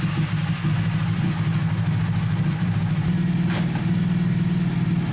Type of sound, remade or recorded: recorded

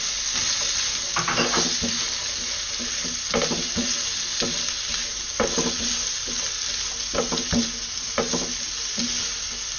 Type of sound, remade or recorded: recorded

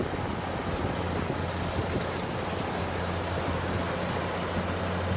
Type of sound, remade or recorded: recorded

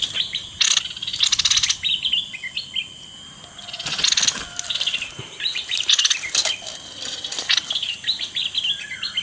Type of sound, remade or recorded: recorded